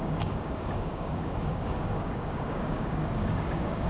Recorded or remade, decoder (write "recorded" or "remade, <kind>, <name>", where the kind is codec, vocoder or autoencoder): remade, codec, DAC